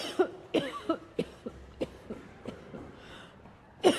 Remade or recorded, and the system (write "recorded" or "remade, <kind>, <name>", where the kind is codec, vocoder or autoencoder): recorded